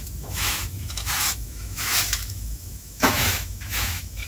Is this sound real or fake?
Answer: fake